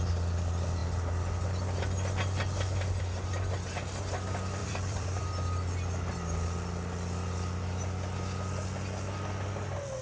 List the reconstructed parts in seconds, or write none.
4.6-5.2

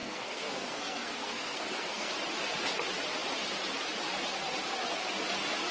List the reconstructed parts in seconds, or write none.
0.0-2.1

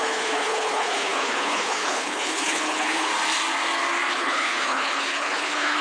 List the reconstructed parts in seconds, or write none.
0.0-3.1; 4.1-5.8

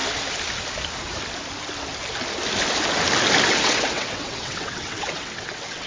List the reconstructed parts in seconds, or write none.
3.5-5.9

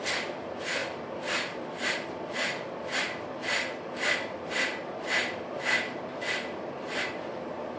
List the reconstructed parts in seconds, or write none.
0.0-7.8